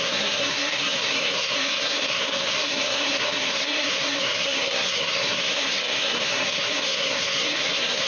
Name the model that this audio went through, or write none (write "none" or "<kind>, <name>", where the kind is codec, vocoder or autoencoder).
codec, SNAC